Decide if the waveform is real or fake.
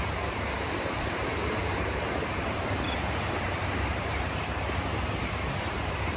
fake